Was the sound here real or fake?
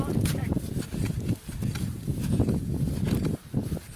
real